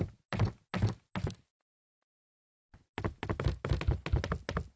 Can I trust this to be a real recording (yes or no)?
yes